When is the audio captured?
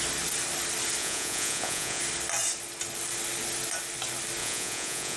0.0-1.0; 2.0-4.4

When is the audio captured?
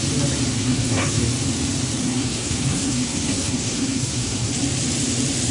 0.0-0.6; 1.2-2.0; 4.5-5.5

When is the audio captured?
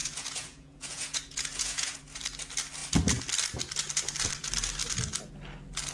2.0-5.9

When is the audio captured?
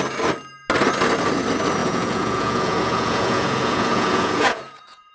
0.0-1.8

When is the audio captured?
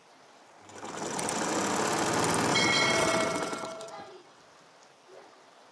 0.0-2.5; 4.4-5.7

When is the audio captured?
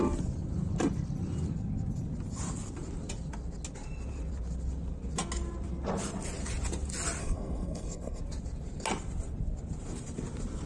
0.0-7.2; 8.2-10.7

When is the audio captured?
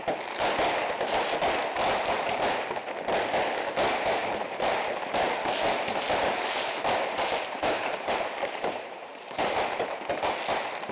0.0-4.2; 9.4-10.9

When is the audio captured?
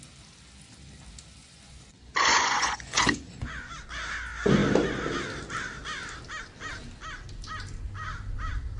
0.0-1.4; 3.7-8.8